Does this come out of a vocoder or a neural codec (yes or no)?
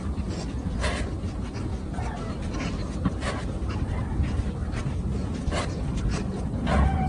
no